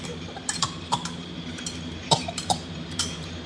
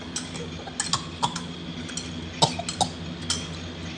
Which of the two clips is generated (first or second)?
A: first